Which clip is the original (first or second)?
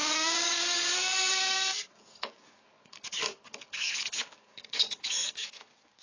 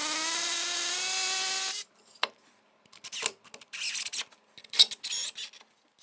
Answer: second